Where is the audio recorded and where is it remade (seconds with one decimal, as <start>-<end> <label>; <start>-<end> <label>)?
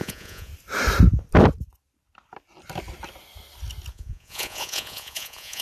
0.0-0.5 remade; 0.5-3.9 recorded; 3.9-5.6 remade